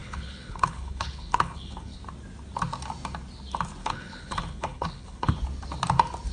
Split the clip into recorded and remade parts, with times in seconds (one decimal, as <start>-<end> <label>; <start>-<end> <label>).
0.0-2.0 remade; 2.0-3.8 recorded; 3.8-5.3 remade; 5.3-6.3 recorded